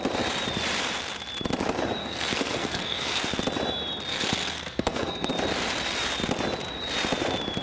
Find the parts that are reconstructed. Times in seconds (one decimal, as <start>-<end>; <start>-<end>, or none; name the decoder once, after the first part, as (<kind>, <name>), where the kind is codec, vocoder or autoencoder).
2.0-3.2 (codec, SNAC); 4.1-5.3